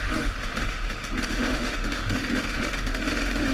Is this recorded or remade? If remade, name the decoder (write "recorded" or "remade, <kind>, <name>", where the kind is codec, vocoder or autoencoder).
remade, autoencoder, DAC-VAE